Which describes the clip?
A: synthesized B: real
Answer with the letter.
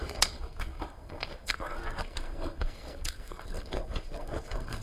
A